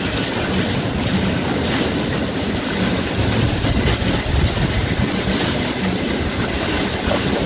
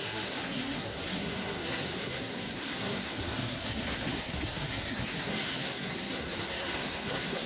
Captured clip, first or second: first